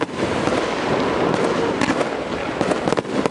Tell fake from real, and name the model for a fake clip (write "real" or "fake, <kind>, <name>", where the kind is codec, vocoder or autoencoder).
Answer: real